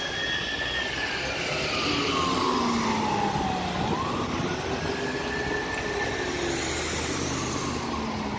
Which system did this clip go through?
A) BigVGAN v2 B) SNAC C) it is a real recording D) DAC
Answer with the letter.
C